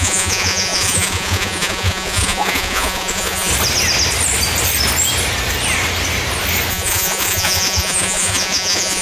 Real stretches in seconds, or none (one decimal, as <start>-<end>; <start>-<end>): 3.5-6.7